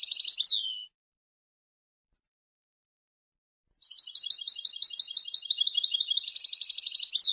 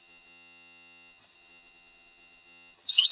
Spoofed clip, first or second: second